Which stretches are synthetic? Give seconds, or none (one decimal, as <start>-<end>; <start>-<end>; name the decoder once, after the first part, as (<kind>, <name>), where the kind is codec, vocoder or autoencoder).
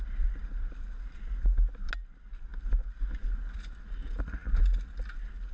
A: none